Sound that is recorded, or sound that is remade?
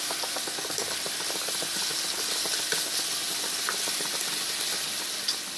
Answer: recorded